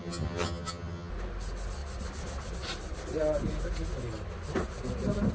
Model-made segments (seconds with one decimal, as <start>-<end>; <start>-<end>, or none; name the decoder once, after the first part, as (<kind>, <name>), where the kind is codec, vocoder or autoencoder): 0.0-1.1 (vocoder, HiFi-GAN)